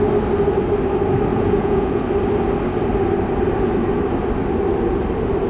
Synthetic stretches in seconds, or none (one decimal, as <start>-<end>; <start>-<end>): 1.3-2.0